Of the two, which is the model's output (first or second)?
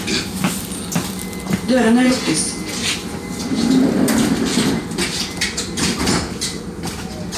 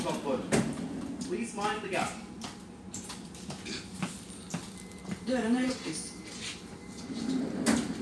second